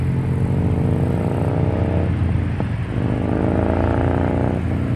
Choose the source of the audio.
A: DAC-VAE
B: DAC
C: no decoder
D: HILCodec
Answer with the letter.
C